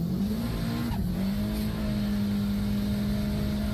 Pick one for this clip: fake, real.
real